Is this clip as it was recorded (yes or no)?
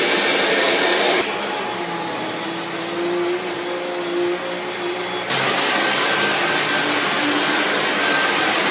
yes